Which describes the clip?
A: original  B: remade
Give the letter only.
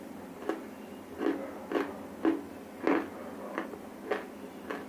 A